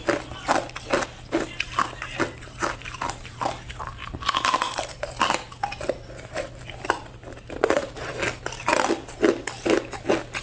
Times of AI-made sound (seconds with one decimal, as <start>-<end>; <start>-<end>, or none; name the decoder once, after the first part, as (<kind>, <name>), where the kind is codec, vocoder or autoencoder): 0.0-4.0 (vocoder, BigVGAN v2); 6.6-10.4